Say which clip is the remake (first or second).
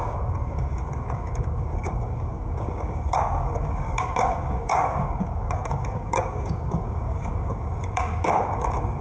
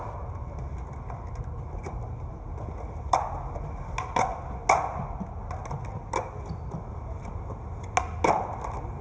first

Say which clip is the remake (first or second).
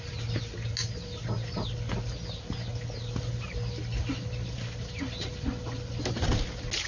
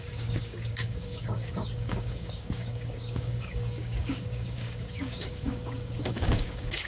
second